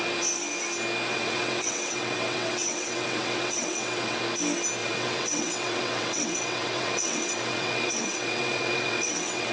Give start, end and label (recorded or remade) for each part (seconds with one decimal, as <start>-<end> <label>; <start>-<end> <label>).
0.0-1.1 recorded; 1.1-4.2 remade; 4.2-4.8 recorded; 4.8-9.5 remade